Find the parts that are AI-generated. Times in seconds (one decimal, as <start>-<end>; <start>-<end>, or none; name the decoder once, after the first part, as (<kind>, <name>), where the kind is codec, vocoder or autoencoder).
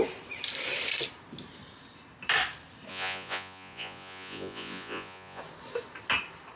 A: 2.9-5.4 (vocoder, Vocos)